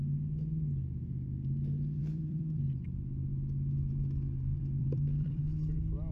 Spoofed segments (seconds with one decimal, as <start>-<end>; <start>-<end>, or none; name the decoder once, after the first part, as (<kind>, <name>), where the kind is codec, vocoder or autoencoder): 2.0-2.6 (vocoder, BigVGAN v2); 4.5-5.4